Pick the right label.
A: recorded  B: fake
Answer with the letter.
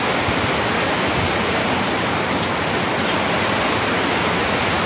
A